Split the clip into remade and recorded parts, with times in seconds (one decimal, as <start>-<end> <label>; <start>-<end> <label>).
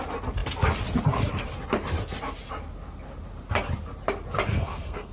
0.0-4.5 recorded; 4.5-5.1 remade